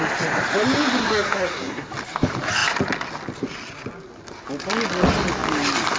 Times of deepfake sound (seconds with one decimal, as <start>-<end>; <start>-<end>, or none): 1.0-1.9